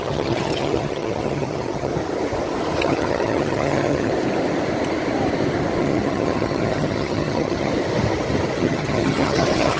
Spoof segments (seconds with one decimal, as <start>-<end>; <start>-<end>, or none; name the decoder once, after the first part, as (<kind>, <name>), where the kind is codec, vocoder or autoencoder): 0.0-1.9 (vocoder, HiFi-GAN); 2.8-4.1; 5.8-7.7; 8.6-9.8